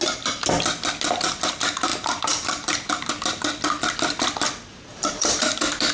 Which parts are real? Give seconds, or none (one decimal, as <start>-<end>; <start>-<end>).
0.0-1.9; 3.1-4.9; 5.5-5.9